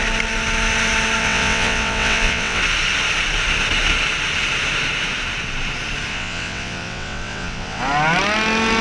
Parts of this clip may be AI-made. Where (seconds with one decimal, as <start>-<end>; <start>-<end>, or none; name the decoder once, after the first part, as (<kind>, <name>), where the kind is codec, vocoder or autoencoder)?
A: 1.2-2.6 (vocoder, WaveNeXt); 6.1-7.8

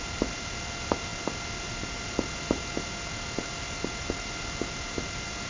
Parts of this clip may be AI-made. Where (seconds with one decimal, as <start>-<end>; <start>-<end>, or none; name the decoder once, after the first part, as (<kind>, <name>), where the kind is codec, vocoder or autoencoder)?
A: none